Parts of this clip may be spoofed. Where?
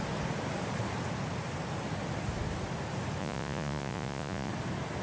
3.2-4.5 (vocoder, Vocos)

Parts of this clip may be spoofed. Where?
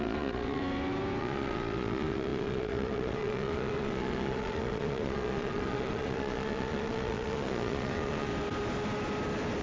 0.0-0.6 (vocoder, Vocos); 1.2-8.3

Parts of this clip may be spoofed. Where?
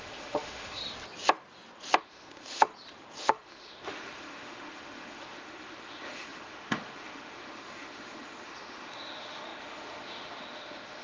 0.0-0.8 (autoencoder, DAC-VAE); 2.0-2.7; 3.2-11.0